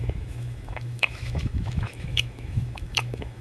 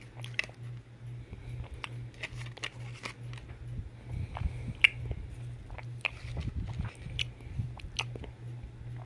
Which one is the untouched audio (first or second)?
second